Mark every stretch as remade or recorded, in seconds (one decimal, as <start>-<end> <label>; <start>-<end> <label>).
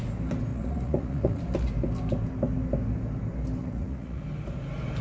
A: 0.0-0.5 recorded; 0.5-1.4 remade; 1.4-3.6 recorded; 3.6-4.2 remade; 4.2-5.0 recorded